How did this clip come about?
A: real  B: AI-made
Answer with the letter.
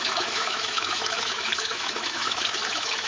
B